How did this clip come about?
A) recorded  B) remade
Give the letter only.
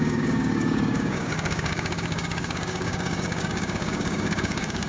B